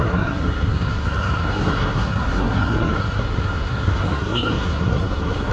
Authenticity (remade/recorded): remade